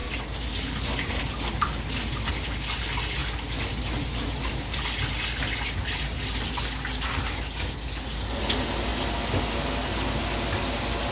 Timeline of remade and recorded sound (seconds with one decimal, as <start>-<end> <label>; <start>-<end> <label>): 0.0-11.1 recorded